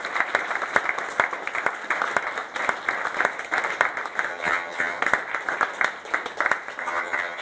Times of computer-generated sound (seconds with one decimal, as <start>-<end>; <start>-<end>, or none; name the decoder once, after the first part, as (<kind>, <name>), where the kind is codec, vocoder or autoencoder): 4.3-5.0 (vocoder, HiFi-GAN); 6.8-7.4

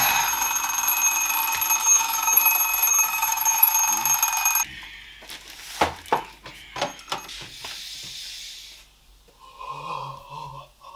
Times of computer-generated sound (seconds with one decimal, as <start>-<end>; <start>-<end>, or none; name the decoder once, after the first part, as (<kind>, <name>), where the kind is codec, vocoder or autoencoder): 1.8-2.4 (autoencoder, DAC-VAE); 2.9-3.7

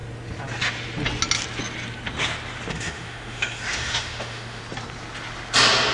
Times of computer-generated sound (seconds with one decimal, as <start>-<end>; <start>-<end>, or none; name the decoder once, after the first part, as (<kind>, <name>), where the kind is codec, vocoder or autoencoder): 2.7-4.6 (autoencoder, DAC-VAE)

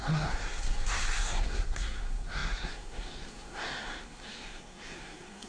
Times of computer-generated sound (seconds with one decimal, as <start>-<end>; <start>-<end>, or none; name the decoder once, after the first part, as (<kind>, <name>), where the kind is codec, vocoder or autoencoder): 0.0-5.5 (codec, SNAC)